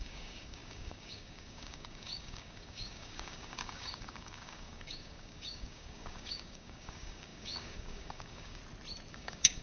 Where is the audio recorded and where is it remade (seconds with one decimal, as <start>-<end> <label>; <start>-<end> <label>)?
0.0-8.6 remade; 8.6-9.1 recorded; 9.1-9.6 remade